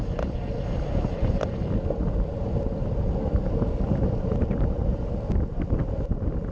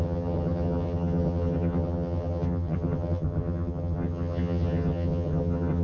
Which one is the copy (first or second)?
second